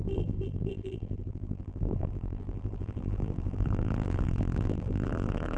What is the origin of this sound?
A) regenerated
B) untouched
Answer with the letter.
A